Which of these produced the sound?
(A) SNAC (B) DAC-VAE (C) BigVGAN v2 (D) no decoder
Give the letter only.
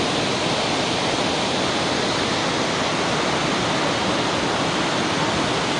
D